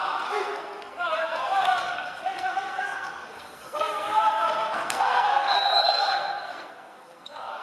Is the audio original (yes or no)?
no